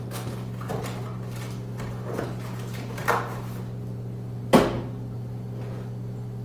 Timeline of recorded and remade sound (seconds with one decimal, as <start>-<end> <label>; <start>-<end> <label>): 0.0-6.4 recorded